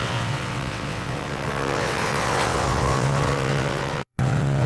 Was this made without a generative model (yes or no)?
no